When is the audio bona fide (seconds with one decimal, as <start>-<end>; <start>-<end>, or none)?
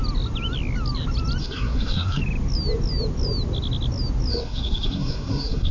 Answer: 0.0-1.4; 2.2-4.3